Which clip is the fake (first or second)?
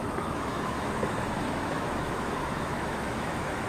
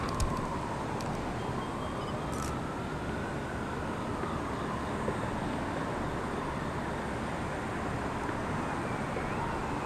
first